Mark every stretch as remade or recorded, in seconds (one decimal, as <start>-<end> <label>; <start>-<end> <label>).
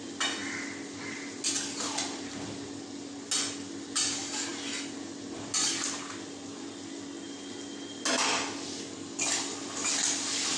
0.0-10.6 recorded